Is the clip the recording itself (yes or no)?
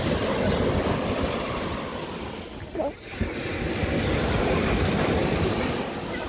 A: yes